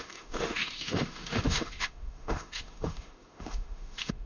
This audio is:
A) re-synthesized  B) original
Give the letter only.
A